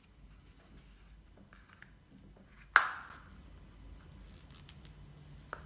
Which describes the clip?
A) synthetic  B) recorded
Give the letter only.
B